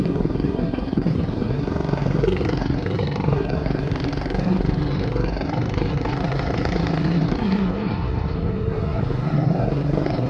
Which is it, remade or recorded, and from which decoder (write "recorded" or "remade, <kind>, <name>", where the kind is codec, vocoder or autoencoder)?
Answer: remade, codec, SNAC